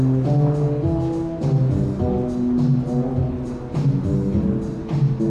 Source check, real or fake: real